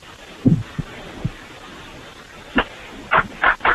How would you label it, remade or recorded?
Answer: recorded